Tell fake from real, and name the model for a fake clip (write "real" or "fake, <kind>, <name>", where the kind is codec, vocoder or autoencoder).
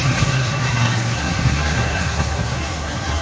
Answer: fake, codec, SNAC